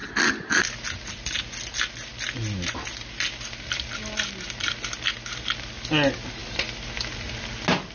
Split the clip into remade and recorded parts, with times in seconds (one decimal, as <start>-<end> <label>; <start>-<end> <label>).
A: 0.0-7.9 recorded

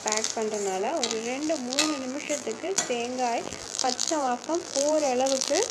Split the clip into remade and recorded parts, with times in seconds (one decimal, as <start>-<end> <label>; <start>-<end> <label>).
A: 0.0-0.8 recorded; 0.8-2.8 remade; 2.8-3.4 recorded; 3.4-5.7 remade